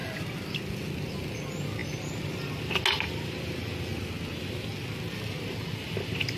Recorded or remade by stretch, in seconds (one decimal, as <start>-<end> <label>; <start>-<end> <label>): 0.0-6.4 recorded